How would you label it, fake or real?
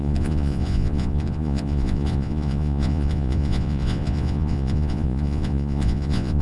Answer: fake